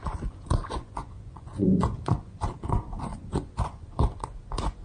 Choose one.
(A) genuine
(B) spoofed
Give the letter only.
B